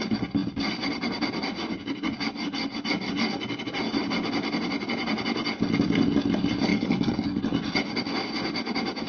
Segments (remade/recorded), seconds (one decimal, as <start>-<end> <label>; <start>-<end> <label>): 0.0-6.7 recorded; 6.7-7.4 remade; 7.4-9.1 recorded